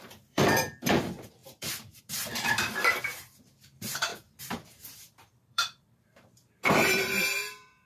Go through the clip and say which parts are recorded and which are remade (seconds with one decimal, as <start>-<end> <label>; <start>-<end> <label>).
0.0-7.9 remade